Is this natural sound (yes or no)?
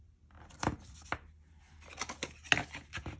yes